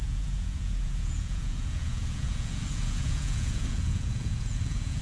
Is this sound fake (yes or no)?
yes